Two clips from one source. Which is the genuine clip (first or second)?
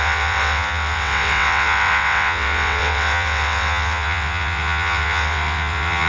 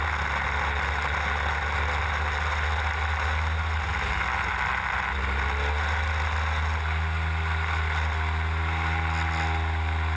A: second